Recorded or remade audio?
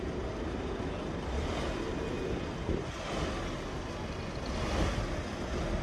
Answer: recorded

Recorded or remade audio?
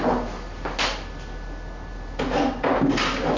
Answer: recorded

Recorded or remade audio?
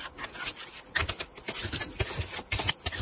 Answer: recorded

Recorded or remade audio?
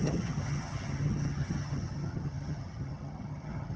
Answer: remade